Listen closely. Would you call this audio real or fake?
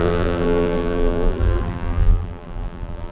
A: fake